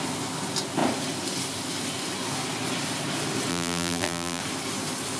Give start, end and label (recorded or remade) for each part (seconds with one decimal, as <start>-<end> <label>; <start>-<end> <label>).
0.0-3.5 recorded; 3.5-4.4 remade; 4.4-5.2 recorded